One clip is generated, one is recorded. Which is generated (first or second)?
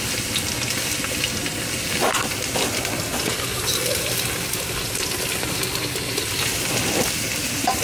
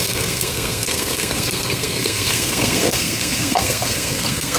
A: second